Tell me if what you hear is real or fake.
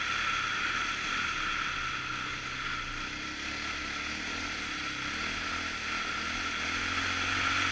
real